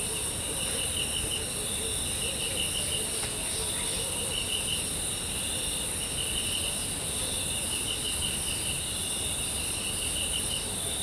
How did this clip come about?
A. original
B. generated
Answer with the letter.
A